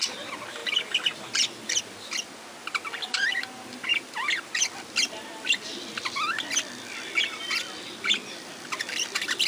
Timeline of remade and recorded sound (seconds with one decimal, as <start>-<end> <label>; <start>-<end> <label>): 0.0-9.5 recorded